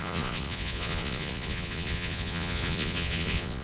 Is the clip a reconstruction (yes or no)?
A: yes